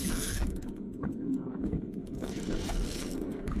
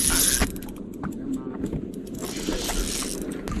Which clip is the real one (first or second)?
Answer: second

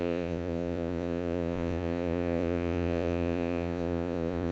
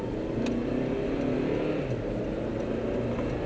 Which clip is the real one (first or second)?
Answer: second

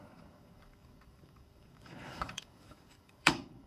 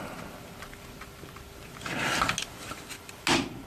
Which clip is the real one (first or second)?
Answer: second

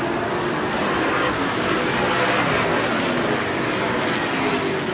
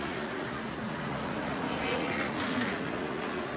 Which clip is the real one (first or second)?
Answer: first